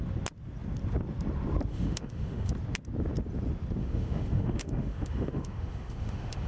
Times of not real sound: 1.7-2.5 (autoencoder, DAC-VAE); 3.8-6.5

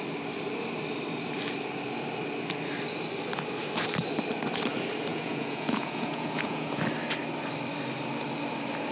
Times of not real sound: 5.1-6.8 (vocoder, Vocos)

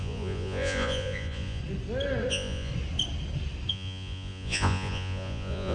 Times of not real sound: 0.0-1.6 (vocoder, Vocos); 2.3-2.7; 3.7-5.7

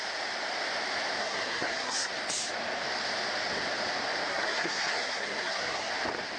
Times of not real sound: 1.2-2.1 (codec, SNAC); 4.3-5.9